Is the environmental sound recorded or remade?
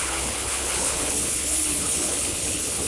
remade